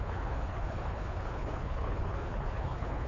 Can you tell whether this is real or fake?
fake